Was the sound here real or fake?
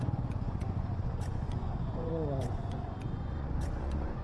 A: fake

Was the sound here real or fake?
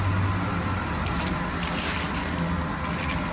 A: real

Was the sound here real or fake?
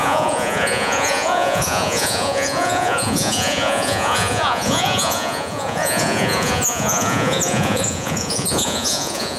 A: fake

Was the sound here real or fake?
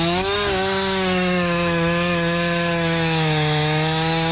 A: fake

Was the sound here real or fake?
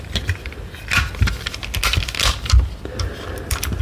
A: real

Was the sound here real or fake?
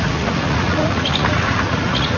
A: fake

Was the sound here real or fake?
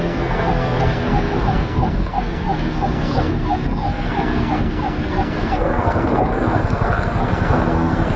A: fake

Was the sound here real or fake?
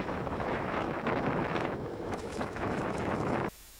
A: fake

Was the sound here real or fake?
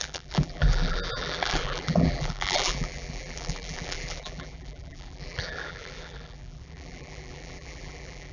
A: fake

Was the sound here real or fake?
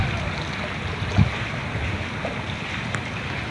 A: real